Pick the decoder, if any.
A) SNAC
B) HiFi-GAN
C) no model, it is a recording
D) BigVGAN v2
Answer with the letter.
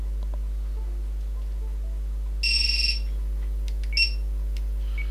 C